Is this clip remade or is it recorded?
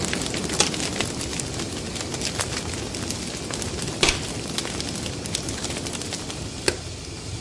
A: recorded